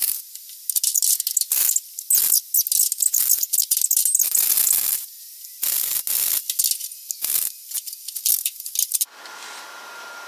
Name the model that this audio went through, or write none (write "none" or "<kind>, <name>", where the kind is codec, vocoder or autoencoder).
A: none